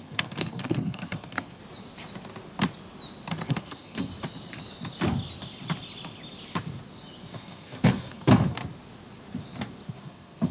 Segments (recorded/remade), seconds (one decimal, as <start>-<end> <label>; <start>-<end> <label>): 0.0-1.6 remade; 1.6-3.5 recorded; 3.5-4.1 remade; 4.1-7.3 recorded; 7.3-8.6 remade; 8.6-9.9 recorded; 9.9-10.5 remade